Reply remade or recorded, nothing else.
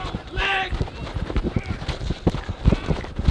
recorded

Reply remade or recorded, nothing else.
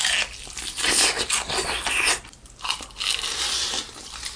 recorded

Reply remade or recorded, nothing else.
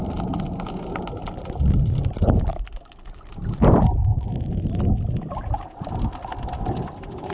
recorded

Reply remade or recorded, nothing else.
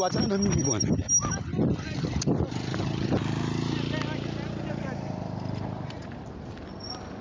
recorded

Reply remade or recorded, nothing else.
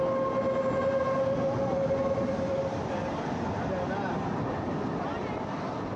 recorded